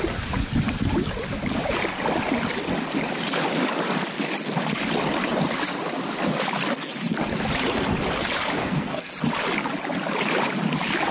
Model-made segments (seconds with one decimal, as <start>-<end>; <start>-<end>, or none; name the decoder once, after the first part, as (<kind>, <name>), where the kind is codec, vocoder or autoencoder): 8.6-9.1 (codec, SNAC)